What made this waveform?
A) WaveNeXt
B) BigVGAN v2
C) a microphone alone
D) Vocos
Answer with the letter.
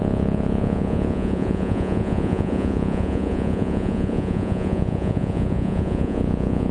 D